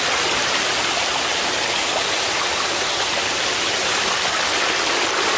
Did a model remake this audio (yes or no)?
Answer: no